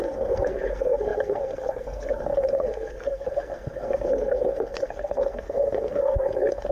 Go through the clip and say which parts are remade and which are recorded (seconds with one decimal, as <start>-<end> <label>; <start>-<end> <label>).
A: 0.0-6.7 remade